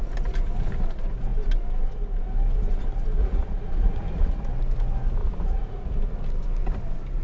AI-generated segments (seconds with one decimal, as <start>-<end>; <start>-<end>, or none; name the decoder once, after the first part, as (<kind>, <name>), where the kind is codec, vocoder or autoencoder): 3.2-4.3 (vocoder, Vocos); 5.2-5.9